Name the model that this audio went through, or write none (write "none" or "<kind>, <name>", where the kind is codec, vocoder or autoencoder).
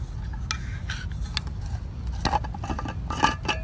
none